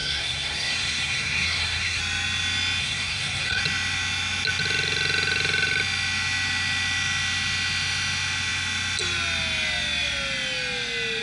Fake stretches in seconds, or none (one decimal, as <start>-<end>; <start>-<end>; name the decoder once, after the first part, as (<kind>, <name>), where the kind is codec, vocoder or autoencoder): 0.0-2.0 (codec, SNAC); 2.8-3.6